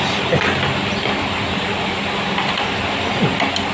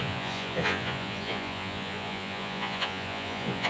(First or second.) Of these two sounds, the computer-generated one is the second